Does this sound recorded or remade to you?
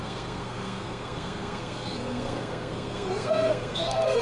remade